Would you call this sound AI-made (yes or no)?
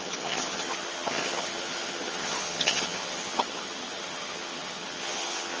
yes